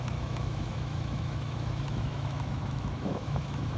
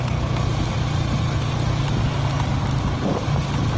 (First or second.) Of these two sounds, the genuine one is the second